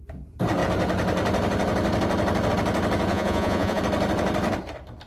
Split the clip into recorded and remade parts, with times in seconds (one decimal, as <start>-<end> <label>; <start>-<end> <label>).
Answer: 0.0-3.1 recorded; 3.1-3.8 remade; 3.8-5.1 recorded

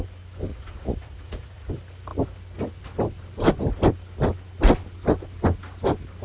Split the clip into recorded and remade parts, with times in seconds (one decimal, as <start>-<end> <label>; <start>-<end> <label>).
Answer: 0.0-0.5 recorded; 0.5-1.7 remade; 1.7-6.2 recorded